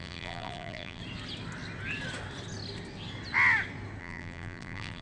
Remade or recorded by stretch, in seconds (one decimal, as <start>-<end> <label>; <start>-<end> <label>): 0.0-1.0 remade; 1.0-4.0 recorded; 4.0-5.0 remade